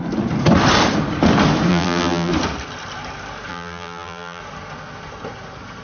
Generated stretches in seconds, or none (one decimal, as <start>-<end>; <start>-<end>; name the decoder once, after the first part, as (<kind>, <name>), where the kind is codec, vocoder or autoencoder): 1.7-2.3 (vocoder, BigVGAN v2); 3.5-4.4